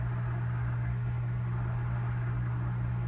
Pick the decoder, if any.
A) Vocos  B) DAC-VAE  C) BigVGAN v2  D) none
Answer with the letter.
D